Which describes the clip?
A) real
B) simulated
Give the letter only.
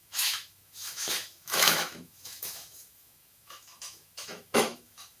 B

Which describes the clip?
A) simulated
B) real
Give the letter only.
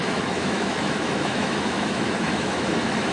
A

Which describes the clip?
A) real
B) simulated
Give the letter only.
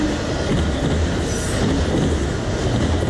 A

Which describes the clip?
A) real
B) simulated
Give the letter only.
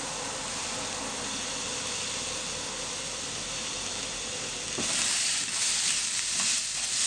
A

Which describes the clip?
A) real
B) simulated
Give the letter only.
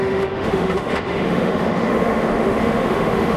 B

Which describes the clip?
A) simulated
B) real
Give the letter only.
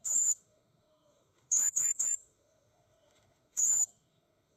A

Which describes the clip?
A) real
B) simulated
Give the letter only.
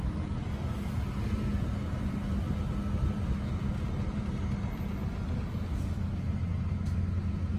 A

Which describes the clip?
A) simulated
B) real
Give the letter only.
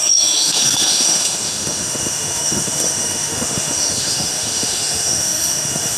A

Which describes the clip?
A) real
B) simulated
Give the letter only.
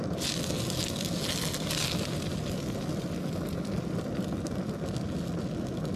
A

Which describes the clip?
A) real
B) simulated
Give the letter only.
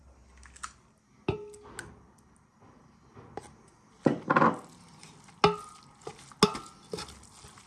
A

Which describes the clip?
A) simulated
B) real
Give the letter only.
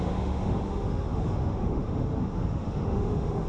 A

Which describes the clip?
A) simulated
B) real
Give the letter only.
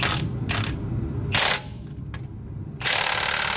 B